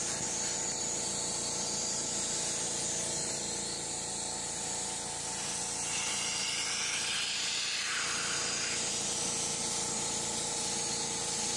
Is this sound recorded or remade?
recorded